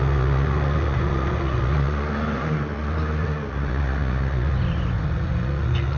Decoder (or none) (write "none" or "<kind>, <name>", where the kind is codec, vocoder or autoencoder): vocoder, Vocos